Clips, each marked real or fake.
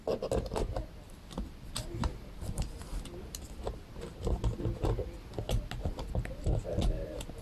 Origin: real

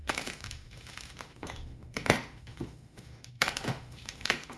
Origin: fake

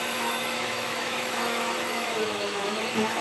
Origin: fake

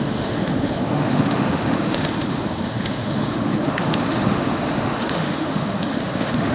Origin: fake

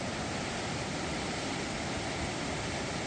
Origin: real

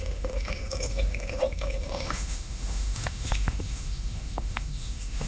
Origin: fake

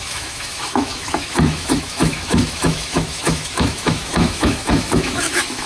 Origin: fake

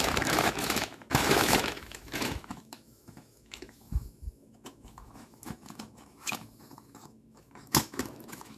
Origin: fake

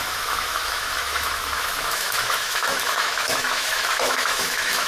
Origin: fake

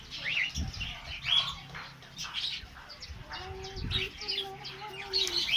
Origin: real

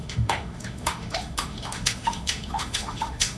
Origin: fake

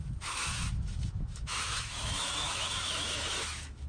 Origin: fake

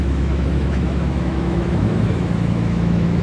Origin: fake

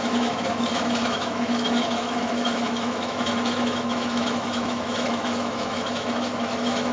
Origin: fake